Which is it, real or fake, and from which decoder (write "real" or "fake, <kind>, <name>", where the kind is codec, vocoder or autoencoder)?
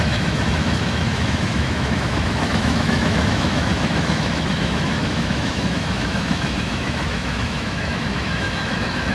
fake, autoencoder, DAC-VAE